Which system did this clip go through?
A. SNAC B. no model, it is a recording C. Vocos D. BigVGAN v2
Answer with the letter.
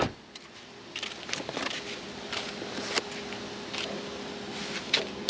B